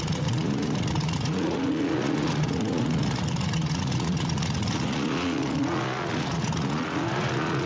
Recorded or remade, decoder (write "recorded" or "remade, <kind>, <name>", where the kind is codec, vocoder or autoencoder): remade, vocoder, Vocos